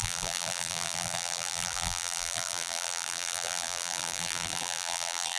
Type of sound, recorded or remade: remade